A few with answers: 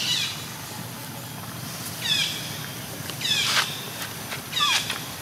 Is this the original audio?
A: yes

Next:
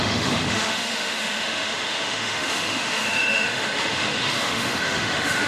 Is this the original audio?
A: no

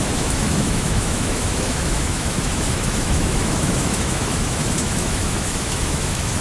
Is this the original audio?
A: no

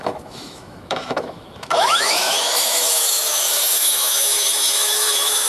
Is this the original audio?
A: no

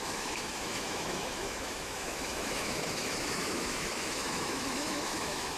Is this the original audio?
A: no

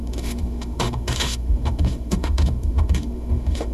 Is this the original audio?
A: no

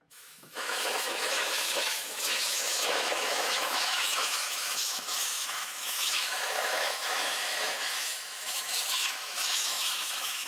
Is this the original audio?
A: no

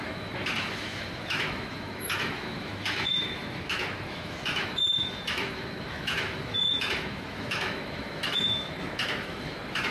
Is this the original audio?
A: no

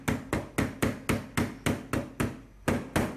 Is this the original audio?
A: yes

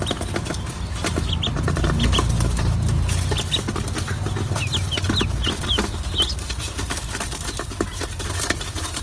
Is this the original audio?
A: yes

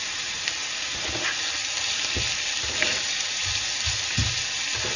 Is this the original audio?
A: yes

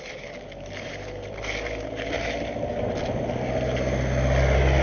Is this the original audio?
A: yes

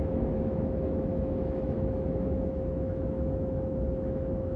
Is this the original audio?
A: no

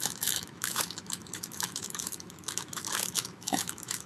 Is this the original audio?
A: no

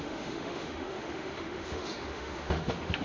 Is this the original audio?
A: no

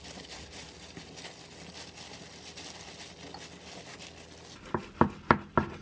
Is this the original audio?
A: yes